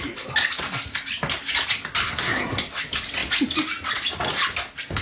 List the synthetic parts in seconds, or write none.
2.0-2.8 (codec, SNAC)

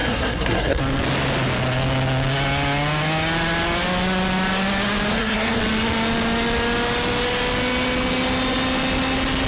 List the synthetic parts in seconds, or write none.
0.0-0.8 (codec, SNAC); 5.1-5.6